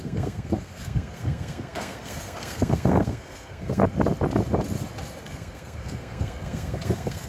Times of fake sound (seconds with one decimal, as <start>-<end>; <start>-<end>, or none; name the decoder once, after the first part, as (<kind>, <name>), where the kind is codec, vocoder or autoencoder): 0.0-3.8 (codec, SNAC); 5.2-7.3